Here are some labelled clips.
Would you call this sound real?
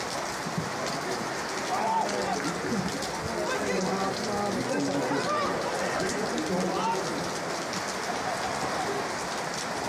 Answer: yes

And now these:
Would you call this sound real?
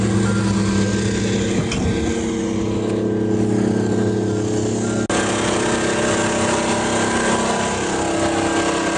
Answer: yes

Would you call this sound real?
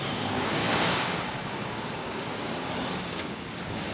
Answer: no